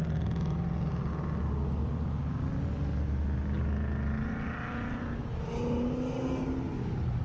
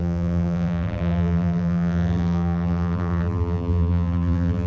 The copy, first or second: second